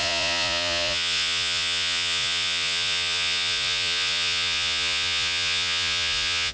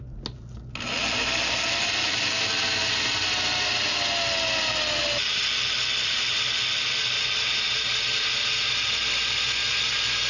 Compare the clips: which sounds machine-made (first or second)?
first